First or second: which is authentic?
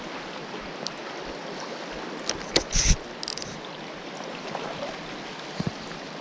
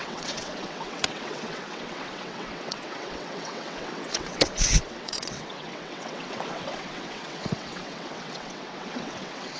first